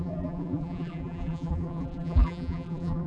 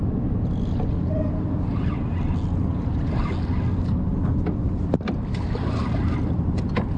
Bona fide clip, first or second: second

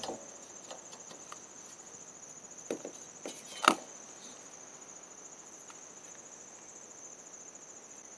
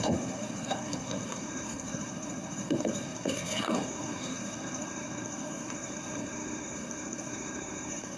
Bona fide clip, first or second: first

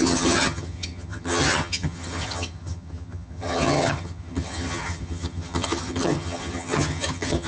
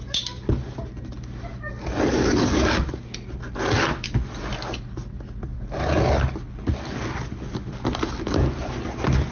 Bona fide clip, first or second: second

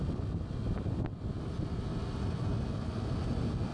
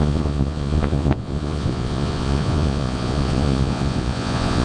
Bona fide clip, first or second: first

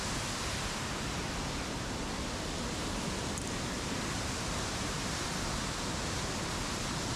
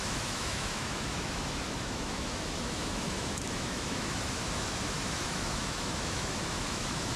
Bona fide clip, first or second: first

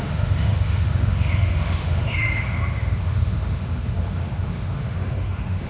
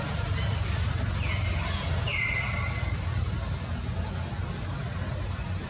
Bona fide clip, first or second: second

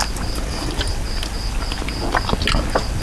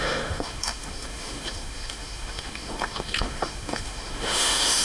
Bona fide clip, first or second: first